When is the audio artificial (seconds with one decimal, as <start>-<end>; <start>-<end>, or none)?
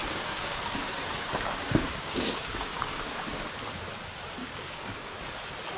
0.0-3.3; 4.4-5.1